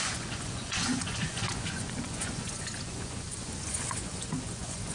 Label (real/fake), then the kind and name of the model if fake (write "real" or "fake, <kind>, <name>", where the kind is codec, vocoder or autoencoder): fake, vocoder, Vocos